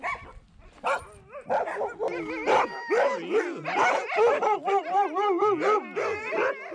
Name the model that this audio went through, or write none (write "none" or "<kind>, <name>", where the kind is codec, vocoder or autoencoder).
none